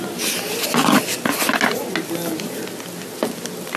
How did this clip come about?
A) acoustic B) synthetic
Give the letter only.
A